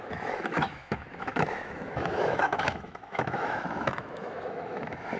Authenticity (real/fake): fake